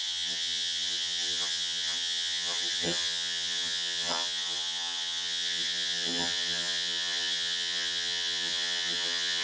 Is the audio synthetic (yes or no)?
yes